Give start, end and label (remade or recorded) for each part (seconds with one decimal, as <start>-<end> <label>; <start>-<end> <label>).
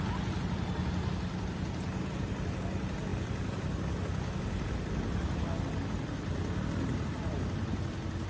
0.0-8.3 recorded